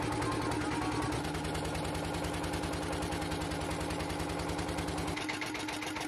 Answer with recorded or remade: recorded